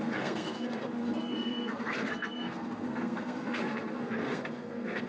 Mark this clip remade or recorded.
remade